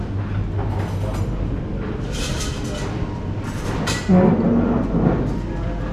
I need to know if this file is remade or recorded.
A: recorded